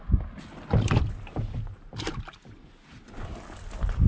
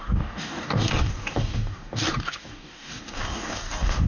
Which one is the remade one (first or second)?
second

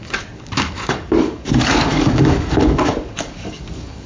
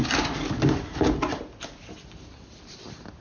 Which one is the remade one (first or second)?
first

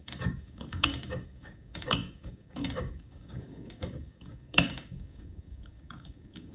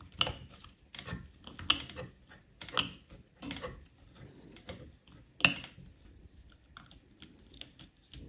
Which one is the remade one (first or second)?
first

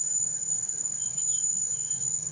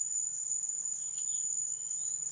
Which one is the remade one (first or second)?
first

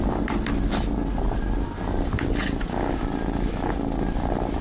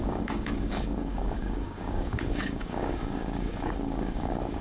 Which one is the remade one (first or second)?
second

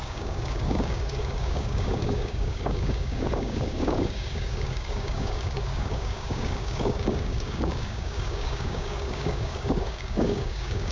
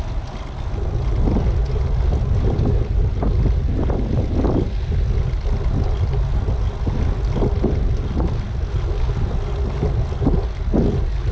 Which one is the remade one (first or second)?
first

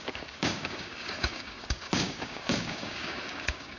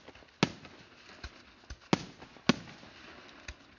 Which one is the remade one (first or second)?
first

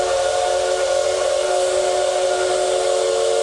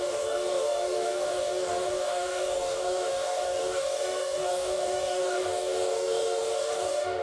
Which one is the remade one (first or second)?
second